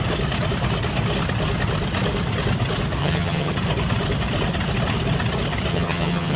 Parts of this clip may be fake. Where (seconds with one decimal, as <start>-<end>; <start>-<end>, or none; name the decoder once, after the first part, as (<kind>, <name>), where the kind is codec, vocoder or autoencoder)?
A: 3.0-3.5 (vocoder, HiFi-GAN); 5.7-6.4